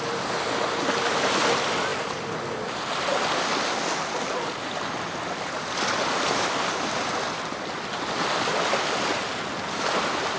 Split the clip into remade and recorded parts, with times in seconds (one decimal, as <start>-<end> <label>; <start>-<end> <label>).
0.0-10.4 recorded